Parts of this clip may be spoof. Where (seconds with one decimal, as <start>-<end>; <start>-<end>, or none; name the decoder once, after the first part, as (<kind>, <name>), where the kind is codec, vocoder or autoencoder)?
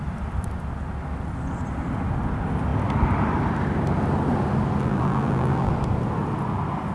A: 4.8-5.7 (vocoder, BigVGAN v2)